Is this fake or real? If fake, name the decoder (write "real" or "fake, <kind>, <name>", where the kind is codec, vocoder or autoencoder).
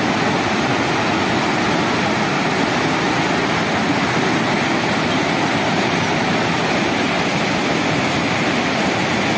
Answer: real